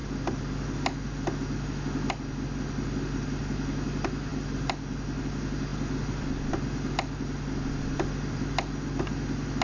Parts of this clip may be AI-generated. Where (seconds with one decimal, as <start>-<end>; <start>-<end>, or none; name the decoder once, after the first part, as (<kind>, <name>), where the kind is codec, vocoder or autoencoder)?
none